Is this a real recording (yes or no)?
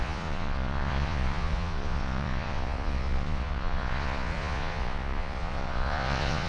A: no